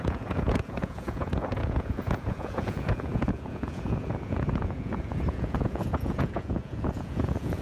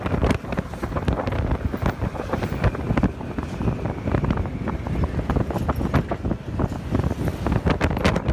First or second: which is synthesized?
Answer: first